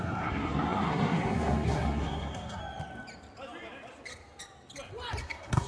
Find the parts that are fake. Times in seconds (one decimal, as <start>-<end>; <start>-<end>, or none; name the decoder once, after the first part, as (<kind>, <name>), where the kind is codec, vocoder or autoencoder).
0.0-2.6 (codec, SNAC); 5.2-5.7